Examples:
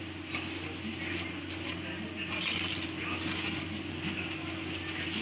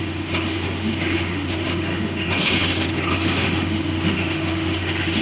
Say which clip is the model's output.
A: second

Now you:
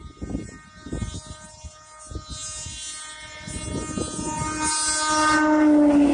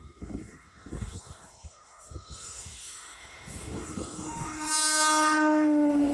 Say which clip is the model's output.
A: second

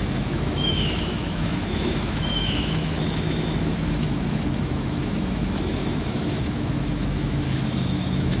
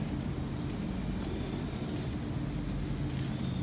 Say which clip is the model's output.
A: first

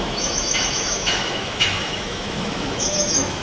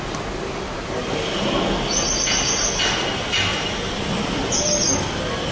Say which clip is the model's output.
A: first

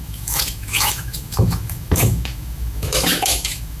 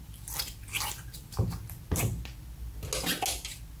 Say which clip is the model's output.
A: first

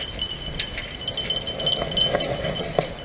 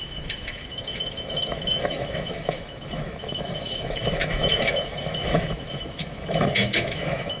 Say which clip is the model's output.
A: second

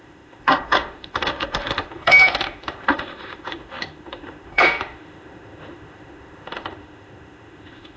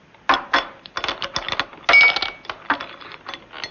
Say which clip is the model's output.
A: first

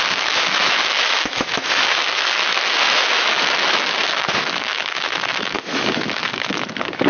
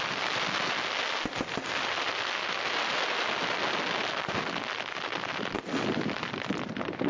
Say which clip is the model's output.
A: first